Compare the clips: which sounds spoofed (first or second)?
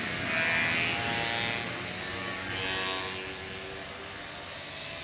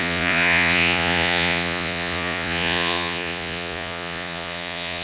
second